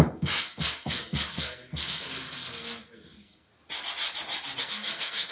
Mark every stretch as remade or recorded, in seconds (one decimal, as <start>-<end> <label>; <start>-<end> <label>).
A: 0.0-3.5 remade; 3.5-4.6 recorded; 4.6-5.3 remade